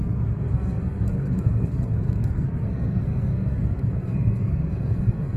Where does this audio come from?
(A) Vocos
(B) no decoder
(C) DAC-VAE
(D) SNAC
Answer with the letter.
D